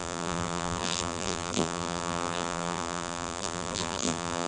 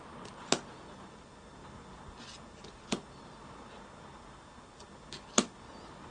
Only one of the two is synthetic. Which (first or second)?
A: first